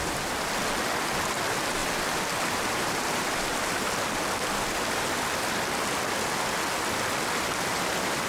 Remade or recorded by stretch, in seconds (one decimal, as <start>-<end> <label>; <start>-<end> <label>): 0.0-1.8 recorded; 1.8-3.5 remade; 3.5-8.3 recorded

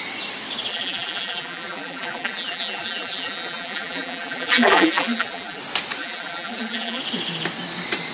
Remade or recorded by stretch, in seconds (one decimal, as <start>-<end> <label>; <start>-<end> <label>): 0.0-0.7 recorded; 0.7-5.6 remade; 5.6-6.0 recorded; 6.0-7.0 remade; 7.0-8.1 recorded

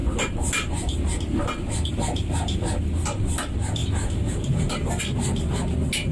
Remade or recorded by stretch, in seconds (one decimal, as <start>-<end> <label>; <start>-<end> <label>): 0.0-3.8 recorded; 3.8-5.0 remade; 5.0-6.1 recorded

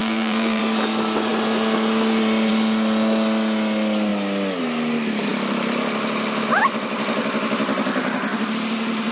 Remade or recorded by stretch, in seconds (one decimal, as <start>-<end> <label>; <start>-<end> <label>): 0.0-0.6 remade; 0.6-9.1 recorded